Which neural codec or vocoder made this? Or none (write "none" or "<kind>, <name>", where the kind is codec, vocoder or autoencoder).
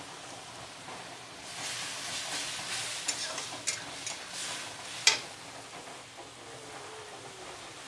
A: none